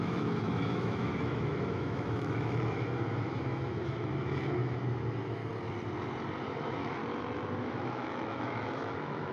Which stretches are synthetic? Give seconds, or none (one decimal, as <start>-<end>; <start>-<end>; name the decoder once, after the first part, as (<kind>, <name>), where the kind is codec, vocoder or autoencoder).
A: 0.0-5.4 (autoencoder, DAC-VAE); 6.4-7.0; 7.6-9.3

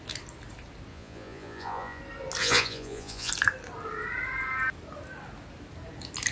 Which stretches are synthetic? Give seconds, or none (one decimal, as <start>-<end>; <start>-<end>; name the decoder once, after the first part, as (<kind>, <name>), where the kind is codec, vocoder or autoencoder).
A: 0.9-2.0 (vocoder, Vocos); 2.4-3.3

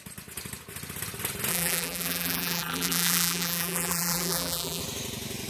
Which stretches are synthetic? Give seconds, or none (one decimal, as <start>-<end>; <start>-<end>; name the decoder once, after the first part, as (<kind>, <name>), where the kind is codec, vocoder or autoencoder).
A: 1.5-4.8 (vocoder, BigVGAN v2)

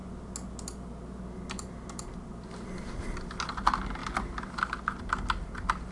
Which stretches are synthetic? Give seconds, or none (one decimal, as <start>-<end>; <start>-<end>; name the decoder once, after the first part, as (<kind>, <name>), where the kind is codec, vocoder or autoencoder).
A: none

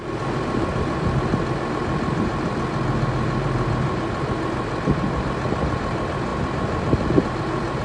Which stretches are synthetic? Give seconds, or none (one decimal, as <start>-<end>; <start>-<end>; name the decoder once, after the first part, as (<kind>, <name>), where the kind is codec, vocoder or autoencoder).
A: none